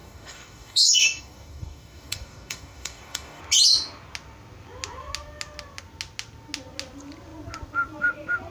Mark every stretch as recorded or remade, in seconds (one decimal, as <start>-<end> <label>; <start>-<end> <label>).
0.0-3.4 remade; 3.4-8.5 recorded